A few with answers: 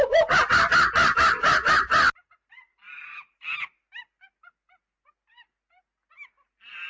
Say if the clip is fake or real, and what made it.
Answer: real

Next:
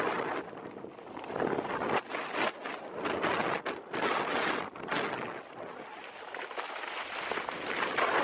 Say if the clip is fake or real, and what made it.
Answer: real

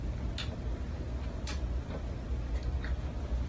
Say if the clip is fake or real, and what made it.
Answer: real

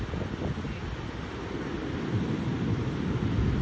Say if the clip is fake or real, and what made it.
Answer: real